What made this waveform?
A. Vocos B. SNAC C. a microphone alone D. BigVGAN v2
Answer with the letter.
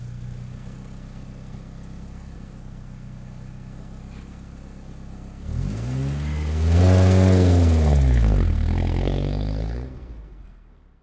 B